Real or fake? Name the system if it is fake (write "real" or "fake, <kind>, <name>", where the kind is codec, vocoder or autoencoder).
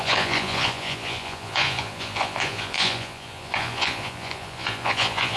fake, vocoder, Vocos